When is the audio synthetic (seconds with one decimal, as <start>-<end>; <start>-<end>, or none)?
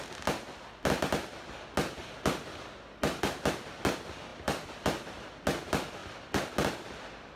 4.3-5.4; 6.0-6.5